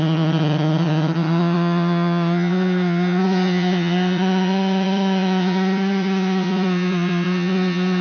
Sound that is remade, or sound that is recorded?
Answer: remade